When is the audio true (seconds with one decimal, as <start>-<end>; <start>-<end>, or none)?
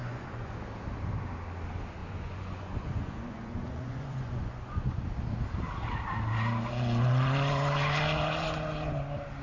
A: 0.5-2.0; 5.0-9.4